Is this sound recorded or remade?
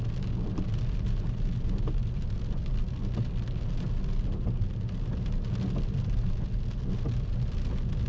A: recorded